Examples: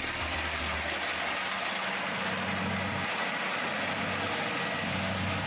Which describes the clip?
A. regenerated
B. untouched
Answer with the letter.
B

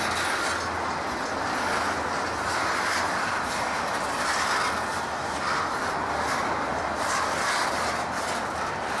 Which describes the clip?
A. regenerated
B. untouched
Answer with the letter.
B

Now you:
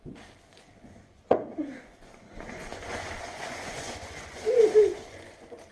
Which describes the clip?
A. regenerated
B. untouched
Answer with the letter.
A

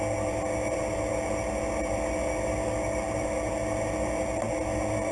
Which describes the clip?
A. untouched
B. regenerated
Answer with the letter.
A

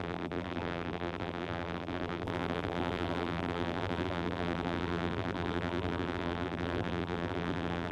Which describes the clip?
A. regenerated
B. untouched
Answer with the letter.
A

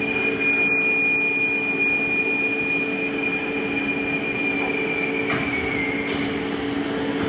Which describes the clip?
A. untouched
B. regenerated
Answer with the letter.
A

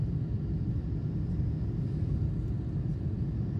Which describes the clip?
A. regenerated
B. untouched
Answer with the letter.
B